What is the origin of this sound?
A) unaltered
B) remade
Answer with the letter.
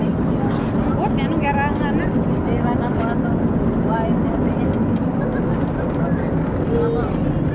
A